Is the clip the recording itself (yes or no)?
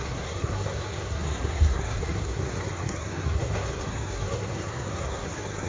no